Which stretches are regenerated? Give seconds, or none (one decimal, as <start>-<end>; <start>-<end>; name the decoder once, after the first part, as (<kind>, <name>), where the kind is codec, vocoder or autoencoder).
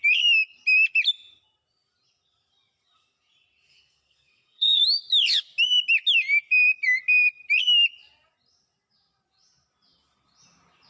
3.7-4.8 (codec, SNAC)